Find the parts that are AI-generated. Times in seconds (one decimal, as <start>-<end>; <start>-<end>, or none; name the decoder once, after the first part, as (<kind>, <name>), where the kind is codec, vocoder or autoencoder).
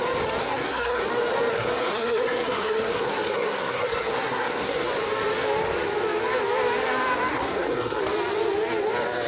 0.4-1.1 (codec, SNAC); 1.5-4.9; 7.3-8.0